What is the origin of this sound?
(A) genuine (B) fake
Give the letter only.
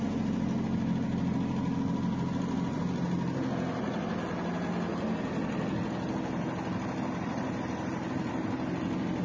A